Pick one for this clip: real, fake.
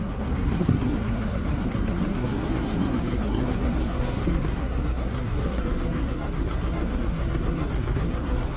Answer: fake